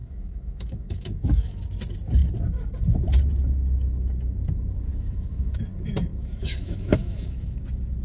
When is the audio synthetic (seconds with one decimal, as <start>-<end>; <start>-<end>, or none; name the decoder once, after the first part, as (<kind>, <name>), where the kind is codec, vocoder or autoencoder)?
0.0-1.6 (autoencoder, DAC-VAE); 4.9-5.6; 6.1-7.6